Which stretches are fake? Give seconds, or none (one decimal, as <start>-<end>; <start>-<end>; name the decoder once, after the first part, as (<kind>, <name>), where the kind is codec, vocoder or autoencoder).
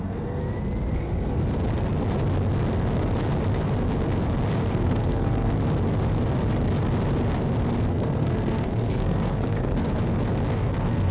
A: 0.0-0.4 (codec, SNAC); 0.9-1.4; 4.7-5.6; 7.9-10.0; 10.6-11.1